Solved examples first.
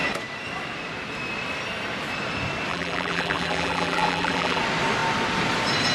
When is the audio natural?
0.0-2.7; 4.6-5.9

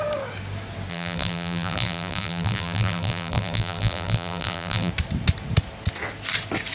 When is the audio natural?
0.0-0.9; 4.9-6.7

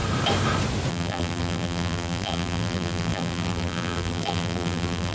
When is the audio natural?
0.0-0.9

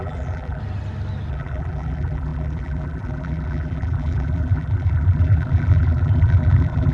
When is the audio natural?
0.6-1.3

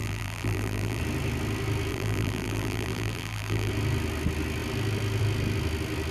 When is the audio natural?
1.0-1.9; 3.7-6.1